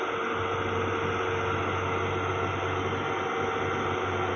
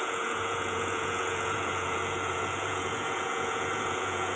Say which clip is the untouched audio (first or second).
first